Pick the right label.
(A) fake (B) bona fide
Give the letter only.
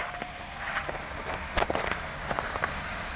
B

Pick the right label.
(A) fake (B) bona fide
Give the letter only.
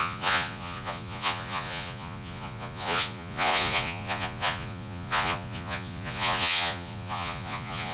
A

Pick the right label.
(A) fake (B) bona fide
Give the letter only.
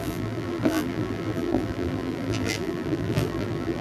A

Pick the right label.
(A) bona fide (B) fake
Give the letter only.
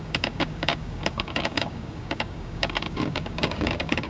B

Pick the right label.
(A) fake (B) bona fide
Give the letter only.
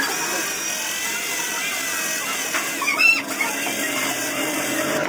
B